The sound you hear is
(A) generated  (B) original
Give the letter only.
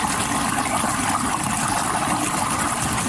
B